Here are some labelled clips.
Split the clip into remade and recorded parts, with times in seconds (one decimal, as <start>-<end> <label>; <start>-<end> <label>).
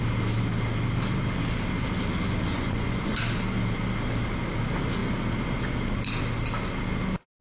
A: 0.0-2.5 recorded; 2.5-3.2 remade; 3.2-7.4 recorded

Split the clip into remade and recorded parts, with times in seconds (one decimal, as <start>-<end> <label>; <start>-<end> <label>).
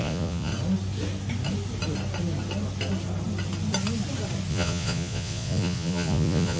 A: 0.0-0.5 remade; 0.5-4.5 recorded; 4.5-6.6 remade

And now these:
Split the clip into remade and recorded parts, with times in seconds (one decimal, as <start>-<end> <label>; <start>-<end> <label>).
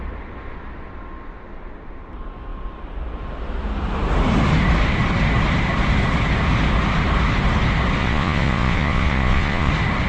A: 0.0-8.0 recorded; 8.0-9.7 remade; 9.7-10.1 recorded